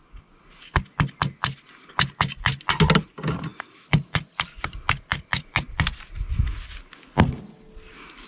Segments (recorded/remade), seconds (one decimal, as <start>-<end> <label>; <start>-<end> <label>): 0.0-8.3 recorded